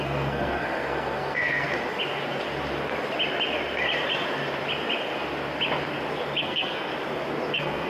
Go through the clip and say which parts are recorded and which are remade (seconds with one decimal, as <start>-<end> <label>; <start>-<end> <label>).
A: 0.0-1.7 remade; 1.7-6.4 recorded; 6.4-6.9 remade; 6.9-7.5 recorded; 7.5-7.9 remade